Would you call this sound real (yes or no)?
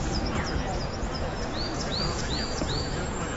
no